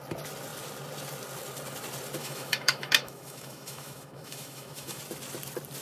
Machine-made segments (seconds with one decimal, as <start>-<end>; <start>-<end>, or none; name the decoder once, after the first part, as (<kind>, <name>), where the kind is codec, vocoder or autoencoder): 2.2-5.0 (autoencoder, DAC-VAE)